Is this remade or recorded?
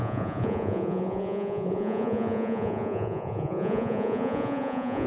remade